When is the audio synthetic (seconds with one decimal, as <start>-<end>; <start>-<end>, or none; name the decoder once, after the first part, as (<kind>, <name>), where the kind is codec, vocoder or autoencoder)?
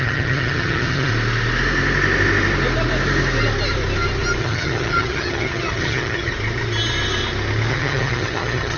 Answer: 0.0-1.1 (vocoder, HiFi-GAN); 4.4-6.3; 7.7-8.8